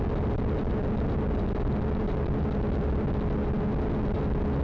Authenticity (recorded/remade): recorded